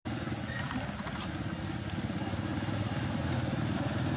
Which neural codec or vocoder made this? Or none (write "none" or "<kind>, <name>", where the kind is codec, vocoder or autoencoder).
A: none